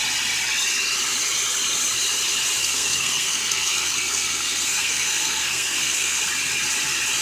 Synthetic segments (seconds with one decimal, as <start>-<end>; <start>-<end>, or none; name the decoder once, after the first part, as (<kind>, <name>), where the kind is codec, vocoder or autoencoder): 2.6-6.3 (codec, SNAC)